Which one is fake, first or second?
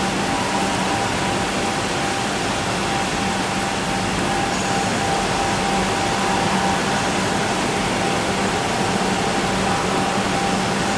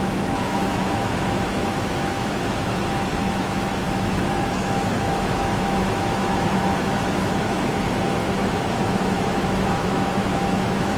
second